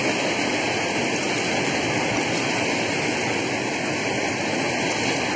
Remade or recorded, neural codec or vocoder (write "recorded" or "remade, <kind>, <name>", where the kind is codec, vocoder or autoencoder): recorded